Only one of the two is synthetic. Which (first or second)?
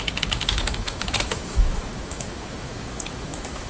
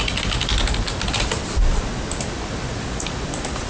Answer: first